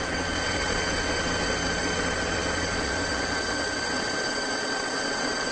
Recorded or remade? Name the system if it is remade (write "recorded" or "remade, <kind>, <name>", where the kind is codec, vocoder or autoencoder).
remade, vocoder, WaveNeXt